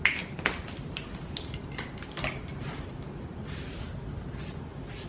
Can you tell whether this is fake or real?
real